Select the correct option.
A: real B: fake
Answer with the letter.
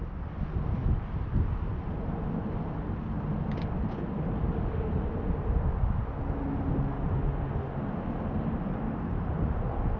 A